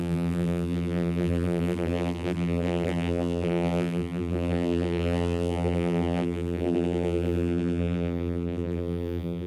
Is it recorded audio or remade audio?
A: remade